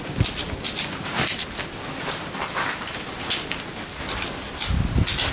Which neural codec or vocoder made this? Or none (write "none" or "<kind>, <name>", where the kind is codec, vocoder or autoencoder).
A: none